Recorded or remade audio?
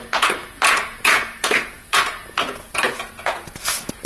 remade